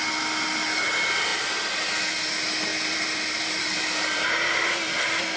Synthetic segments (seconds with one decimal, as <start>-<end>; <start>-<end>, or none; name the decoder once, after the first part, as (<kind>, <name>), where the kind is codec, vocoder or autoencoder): 2.7-5.0 (vocoder, BigVGAN v2)